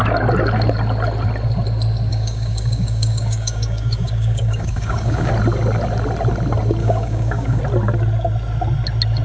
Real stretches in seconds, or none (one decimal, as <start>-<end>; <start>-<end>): 0.0-2.1; 5.3-6.8; 7.6-9.2